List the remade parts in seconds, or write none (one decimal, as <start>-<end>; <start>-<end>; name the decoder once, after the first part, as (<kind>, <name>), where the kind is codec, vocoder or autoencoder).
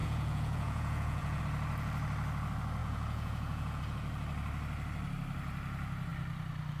0.0-1.4 (vocoder, Vocos); 2.8-3.8